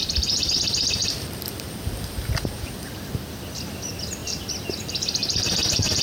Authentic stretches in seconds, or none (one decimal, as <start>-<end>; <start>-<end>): 0.5-1.0; 1.9-4.2; 4.8-5.2